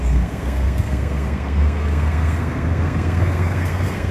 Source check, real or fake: fake